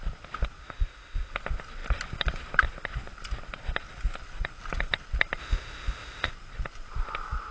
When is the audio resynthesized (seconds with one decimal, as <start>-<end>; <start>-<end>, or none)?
0.6-1.3; 5.4-6.3